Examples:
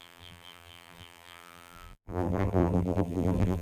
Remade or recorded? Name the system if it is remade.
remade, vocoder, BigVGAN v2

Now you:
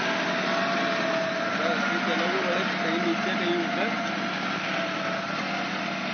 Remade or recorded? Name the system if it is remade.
recorded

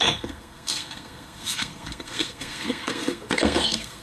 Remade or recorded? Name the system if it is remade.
remade, codec, SNAC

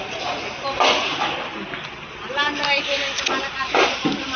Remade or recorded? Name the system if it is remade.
recorded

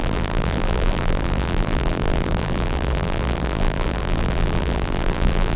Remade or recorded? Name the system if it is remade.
remade, vocoder, BigVGAN v2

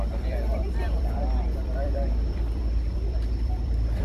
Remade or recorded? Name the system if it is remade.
remade, vocoder, BigVGAN v2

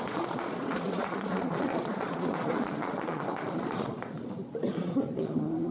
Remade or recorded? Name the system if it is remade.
remade, vocoder, Vocos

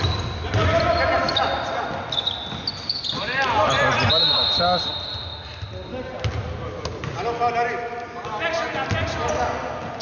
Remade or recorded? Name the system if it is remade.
recorded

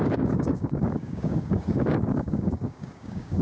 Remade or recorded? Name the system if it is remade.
remade, codec, DAC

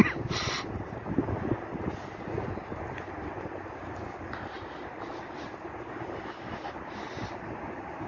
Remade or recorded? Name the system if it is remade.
recorded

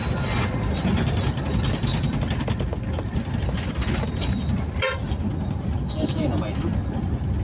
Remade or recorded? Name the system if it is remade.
recorded